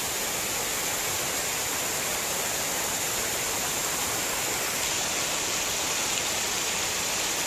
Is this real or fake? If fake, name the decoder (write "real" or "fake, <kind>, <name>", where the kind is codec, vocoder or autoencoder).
real